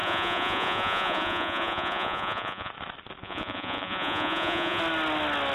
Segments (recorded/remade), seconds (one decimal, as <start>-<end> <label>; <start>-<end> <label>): 0.0-2.7 remade; 2.7-3.2 recorded; 3.2-4.8 remade; 4.8-5.5 recorded